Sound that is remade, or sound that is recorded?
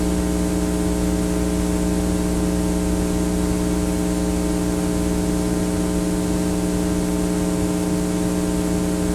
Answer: recorded